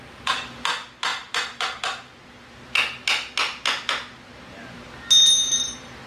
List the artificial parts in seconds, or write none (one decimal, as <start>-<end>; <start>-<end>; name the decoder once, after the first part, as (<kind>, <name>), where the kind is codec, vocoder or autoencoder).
none